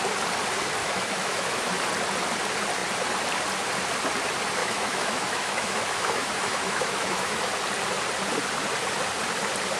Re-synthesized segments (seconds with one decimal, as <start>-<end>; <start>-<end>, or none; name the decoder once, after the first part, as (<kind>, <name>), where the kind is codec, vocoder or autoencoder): 0.8-1.7 (autoencoder, DAC-VAE); 4.6-7.4